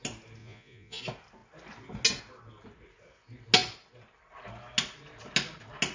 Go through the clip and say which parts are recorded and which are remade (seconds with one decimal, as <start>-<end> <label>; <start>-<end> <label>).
0.0-0.4 recorded; 0.4-1.0 remade; 1.0-5.9 recorded

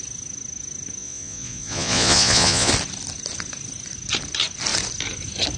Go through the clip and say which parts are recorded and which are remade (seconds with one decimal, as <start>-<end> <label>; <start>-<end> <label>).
0.0-1.0 recorded; 1.0-2.7 remade; 2.7-5.6 recorded